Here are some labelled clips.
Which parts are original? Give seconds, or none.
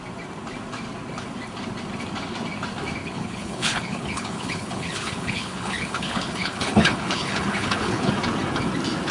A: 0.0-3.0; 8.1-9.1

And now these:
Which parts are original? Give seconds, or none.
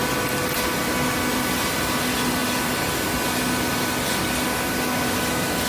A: 0.0-5.7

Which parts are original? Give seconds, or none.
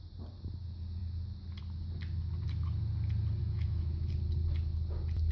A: 0.0-3.4; 4.1-5.3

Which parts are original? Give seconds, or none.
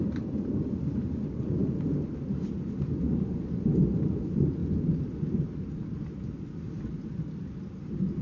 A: 1.6-3.2; 4.6-8.2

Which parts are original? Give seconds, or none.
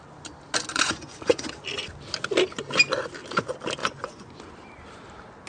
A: 0.0-0.7; 1.5-3.8; 4.5-5.5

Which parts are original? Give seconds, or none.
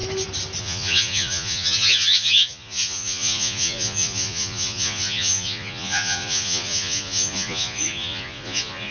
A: 0.0-0.6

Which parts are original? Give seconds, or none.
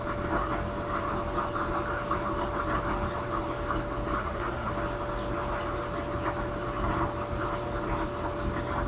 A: 0.0-4.2; 4.7-8.9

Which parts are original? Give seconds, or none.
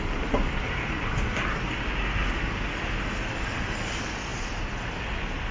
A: 0.0-5.5